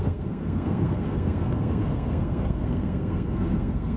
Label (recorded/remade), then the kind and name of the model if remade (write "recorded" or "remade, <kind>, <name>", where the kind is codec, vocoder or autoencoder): remade, codec, SNAC